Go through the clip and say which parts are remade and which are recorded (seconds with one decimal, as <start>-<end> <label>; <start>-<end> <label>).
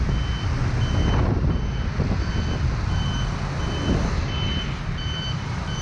0.0-5.8 recorded